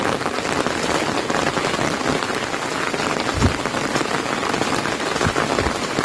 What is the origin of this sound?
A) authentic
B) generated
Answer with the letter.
A